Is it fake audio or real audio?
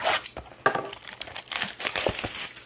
real